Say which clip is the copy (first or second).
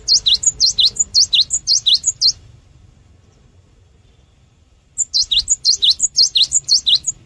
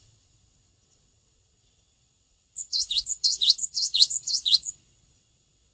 second